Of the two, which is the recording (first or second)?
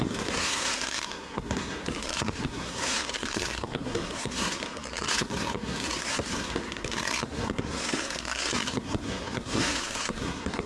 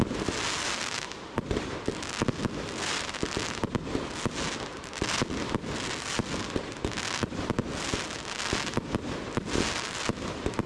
second